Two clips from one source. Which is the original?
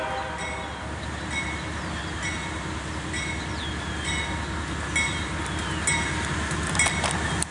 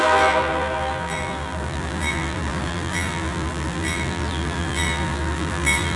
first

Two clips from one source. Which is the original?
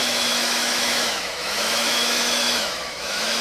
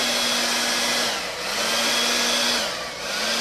second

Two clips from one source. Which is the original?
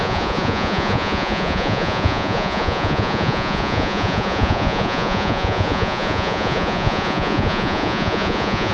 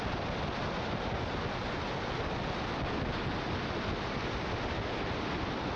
second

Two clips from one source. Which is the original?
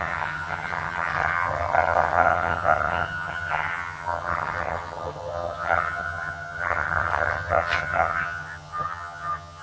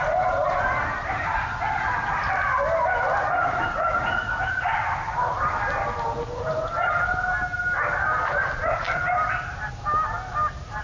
second